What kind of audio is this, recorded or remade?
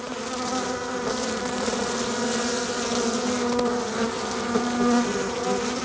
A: recorded